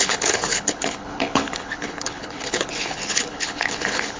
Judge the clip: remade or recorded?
remade